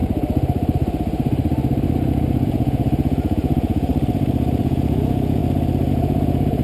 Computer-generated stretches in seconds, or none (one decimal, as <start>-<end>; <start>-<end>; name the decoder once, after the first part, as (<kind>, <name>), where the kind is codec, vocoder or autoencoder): 2.1-3.9 (vocoder, Vocos); 4.6-5.4; 5.9-6.6